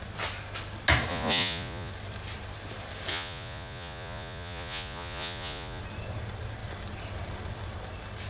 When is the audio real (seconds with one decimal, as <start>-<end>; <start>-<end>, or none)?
0.0-1.1; 1.9-3.1; 5.8-8.3